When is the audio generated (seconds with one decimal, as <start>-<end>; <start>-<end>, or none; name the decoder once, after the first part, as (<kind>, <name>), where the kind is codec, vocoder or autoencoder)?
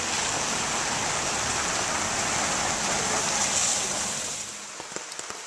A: none